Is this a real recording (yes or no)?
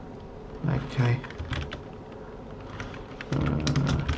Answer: yes